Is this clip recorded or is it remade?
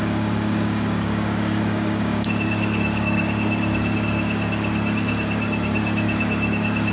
remade